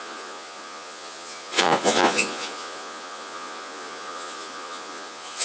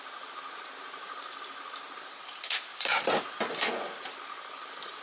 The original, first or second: second